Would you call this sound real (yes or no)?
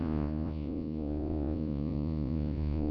no